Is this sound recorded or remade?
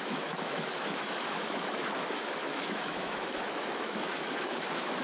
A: remade